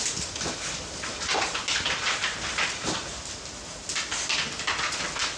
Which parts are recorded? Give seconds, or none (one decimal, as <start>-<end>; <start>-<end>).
0.0-5.4